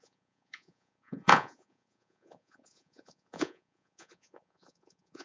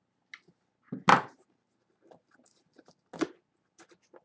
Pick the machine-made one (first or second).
first